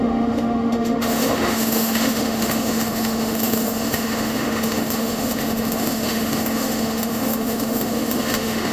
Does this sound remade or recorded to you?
remade